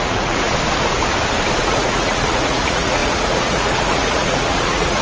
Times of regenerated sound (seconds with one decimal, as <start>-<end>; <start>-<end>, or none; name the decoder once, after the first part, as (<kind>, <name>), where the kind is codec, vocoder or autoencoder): 0.0-0.5 (vocoder, Vocos); 1.6-5.0